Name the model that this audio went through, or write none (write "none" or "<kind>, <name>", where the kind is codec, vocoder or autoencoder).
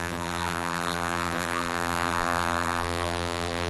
vocoder, BigVGAN v2